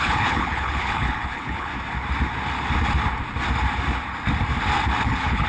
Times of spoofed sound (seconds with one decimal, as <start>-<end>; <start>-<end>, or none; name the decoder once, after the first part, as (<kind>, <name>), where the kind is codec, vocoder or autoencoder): 0.0-1.7 (codec, HILCodec); 5.0-5.5